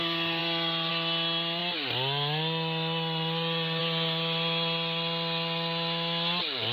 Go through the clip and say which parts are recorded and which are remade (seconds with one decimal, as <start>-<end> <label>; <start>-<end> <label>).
0.0-6.7 recorded